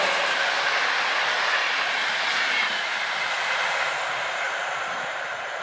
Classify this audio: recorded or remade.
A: remade